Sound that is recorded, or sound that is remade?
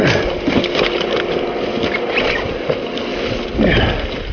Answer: recorded